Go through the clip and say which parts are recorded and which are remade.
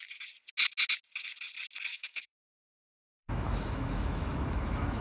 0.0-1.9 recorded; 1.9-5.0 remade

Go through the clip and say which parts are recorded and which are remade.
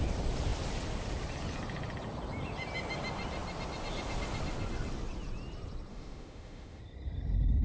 0.0-5.9 recorded; 5.9-6.8 remade; 6.8-7.6 recorded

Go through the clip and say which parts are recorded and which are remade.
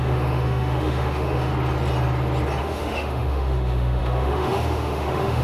0.0-1.5 remade; 1.5-2.6 recorded; 2.6-5.4 remade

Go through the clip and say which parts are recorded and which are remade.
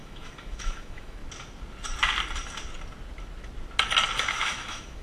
0.0-1.2 remade; 1.2-4.2 recorded; 4.2-5.0 remade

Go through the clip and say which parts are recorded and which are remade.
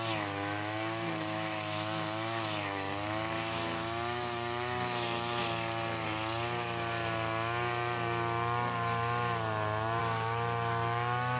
0.0-5.4 remade; 5.4-10.0 recorded; 10.0-11.4 remade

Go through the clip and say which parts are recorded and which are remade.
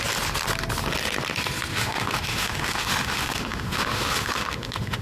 0.0-1.7 recorded; 1.7-5.0 remade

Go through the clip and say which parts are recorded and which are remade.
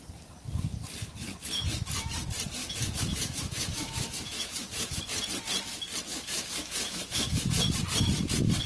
0.0-2.6 recorded; 2.6-5.0 remade; 5.0-6.1 recorded; 6.1-7.5 remade; 7.5-8.7 recorded